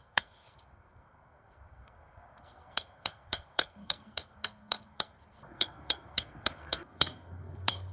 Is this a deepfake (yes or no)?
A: yes